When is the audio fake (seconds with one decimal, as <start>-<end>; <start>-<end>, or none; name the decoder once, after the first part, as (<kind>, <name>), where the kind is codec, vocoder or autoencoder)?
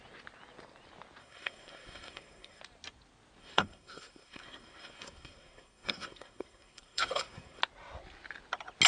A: 1.2-2.6 (codec, SNAC); 3.4-7.6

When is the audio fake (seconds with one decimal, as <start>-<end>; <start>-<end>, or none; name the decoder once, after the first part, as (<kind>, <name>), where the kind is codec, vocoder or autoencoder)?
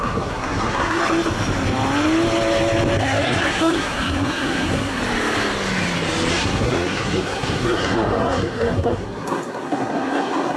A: 0.0-1.0 (codec, SNAC); 3.0-5.0; 6.3-10.6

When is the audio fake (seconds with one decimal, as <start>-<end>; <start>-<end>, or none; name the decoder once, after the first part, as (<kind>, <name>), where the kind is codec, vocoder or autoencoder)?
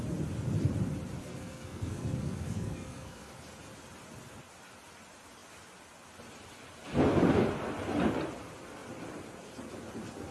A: 1.2-3.3 (codec, SNAC)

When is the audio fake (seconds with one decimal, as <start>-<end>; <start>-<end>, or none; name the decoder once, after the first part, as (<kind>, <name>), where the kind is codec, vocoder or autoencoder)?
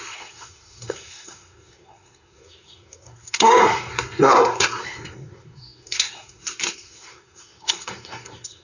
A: 0.0-8.6 (codec, SNAC)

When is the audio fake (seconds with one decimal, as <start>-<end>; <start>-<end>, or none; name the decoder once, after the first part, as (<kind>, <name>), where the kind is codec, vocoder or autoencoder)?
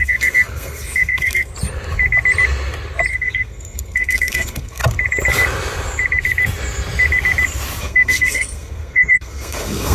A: 0.0-1.5 (codec, SNAC); 3.1-4.8; 7.8-9.9